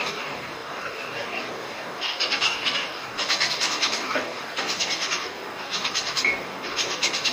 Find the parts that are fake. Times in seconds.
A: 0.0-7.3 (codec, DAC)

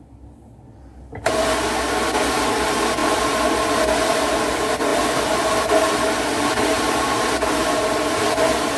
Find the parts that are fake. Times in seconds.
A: none